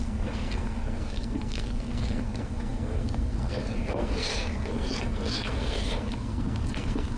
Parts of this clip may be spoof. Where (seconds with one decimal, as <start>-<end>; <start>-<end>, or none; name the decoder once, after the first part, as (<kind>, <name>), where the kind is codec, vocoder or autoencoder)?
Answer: 0.0-7.2 (codec, SNAC)